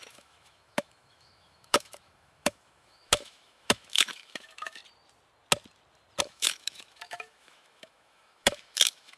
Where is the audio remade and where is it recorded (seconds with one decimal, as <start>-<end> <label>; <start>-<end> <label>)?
0.0-4.8 remade; 4.8-6.2 recorded; 6.2-9.2 remade